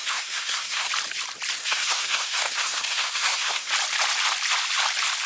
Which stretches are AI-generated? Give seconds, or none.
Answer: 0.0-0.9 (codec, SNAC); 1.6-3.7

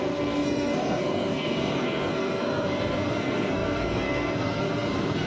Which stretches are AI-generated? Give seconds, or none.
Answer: 0.0-5.3 (codec, SNAC)